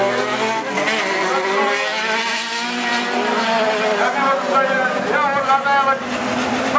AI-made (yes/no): no